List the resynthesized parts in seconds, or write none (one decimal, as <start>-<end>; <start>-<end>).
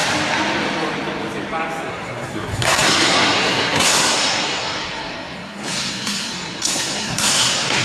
1.9-7.8